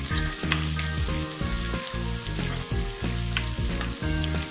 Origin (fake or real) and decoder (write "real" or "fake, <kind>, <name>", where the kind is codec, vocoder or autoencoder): real